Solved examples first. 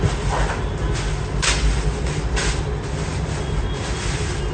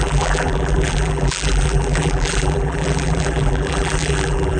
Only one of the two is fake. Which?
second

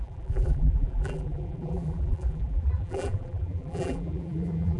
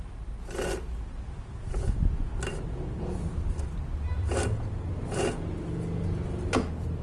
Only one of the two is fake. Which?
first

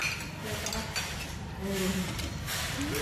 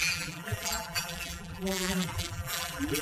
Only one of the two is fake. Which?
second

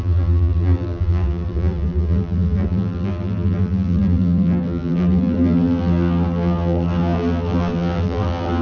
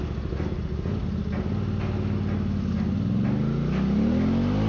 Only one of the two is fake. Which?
first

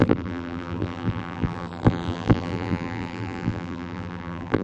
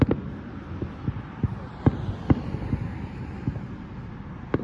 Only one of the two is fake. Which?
first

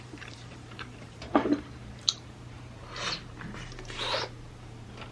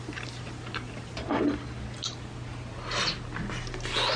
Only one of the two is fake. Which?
first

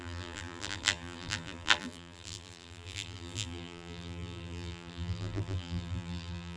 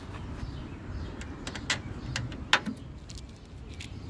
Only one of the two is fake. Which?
first